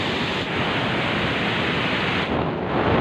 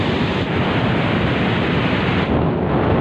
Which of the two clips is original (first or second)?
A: first